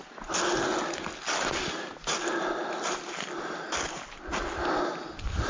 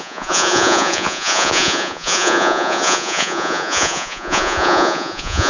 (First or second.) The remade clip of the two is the second